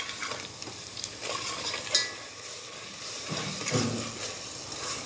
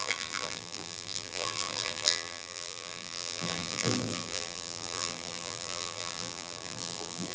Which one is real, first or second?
first